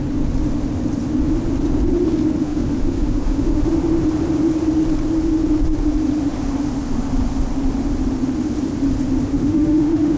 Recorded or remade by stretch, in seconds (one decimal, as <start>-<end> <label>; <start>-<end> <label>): 0.0-2.4 recorded; 2.4-3.7 remade; 3.7-9.3 recorded; 9.3-10.2 remade